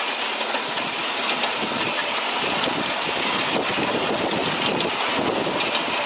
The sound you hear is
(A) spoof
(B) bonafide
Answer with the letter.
B